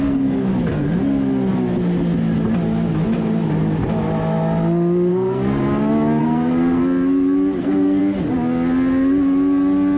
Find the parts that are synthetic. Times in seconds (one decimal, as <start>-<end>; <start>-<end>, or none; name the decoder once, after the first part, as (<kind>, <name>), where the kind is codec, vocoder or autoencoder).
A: 0.0-0.5 (codec, SNAC); 5.1-5.6; 6.2-6.8; 7.6-8.0